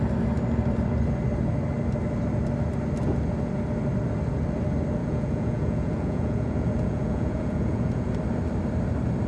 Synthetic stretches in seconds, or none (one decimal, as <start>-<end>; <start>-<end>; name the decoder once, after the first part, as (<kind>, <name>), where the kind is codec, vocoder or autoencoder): 5.0-8.1 (vocoder, Vocos)